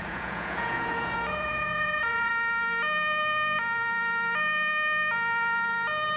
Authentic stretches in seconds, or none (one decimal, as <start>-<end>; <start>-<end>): 2.3-6.2